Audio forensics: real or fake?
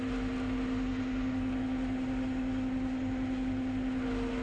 real